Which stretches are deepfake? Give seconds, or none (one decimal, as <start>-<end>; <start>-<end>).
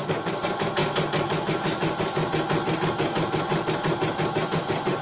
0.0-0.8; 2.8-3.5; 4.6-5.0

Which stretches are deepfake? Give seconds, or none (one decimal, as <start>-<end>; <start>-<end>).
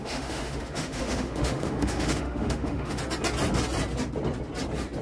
0.0-3.0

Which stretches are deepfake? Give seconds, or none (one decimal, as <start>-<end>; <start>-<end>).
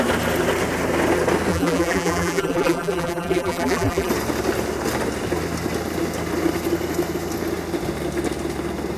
1.5-4.1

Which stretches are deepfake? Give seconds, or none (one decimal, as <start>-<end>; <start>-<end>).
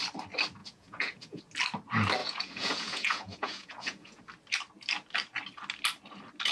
0.6-1.4; 2.2-4.2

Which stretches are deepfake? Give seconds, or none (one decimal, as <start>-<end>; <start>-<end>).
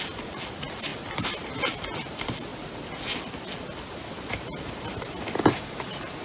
none